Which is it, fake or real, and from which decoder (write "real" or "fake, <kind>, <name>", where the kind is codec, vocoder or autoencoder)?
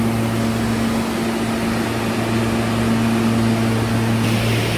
real